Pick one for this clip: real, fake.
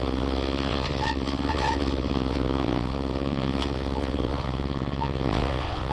fake